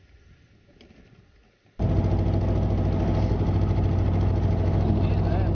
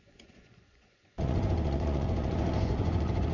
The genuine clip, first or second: first